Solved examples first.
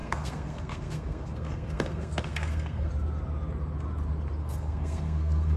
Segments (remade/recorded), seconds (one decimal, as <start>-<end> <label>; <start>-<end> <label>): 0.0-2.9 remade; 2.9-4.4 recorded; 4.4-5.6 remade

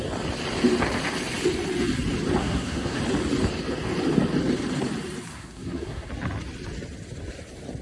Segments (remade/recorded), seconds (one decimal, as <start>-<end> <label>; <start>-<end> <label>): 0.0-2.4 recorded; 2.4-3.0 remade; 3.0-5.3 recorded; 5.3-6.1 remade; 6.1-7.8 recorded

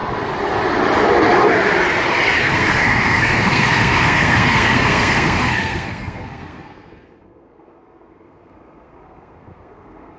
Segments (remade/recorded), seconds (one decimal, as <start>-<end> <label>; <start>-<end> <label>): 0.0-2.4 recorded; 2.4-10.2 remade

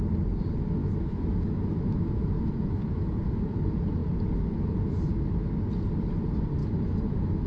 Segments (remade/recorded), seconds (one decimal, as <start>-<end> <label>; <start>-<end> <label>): 0.0-0.8 recorded; 0.8-3.0 remade; 3.0-6.6 recorded; 6.6-7.5 remade

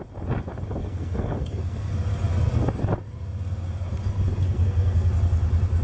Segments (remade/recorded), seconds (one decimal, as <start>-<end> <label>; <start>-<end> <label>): 0.0-0.8 recorded; 0.8-1.9 remade; 1.9-4.3 recorded; 4.3-5.1 remade; 5.1-5.8 recorded